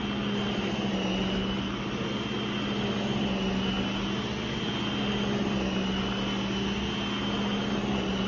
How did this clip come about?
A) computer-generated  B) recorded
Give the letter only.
B